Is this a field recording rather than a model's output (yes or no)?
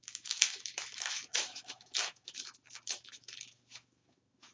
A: no